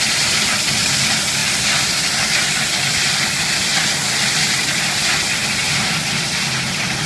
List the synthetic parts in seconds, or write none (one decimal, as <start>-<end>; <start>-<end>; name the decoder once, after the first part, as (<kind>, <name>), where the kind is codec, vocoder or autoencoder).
none